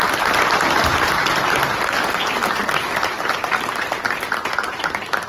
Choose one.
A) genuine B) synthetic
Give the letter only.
A